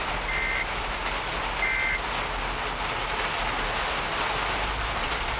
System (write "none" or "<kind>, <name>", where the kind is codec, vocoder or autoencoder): none